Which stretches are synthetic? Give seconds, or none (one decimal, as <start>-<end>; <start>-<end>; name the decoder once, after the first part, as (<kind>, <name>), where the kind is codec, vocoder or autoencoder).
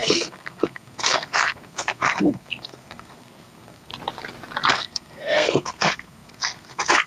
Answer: 0.0-3.9 (codec, SNAC); 4.7-7.1